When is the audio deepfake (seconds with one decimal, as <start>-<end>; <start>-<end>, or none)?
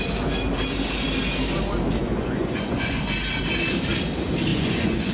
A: 2.0-3.0; 4.5-5.1